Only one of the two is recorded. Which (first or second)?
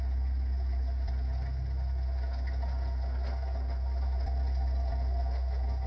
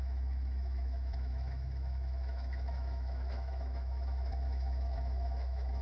first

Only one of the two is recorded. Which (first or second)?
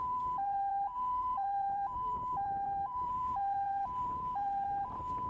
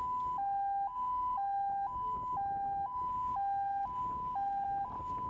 second